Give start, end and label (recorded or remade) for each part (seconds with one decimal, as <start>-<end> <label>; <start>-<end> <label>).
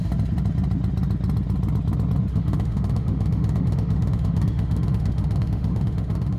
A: 0.0-2.3 recorded; 2.3-6.4 remade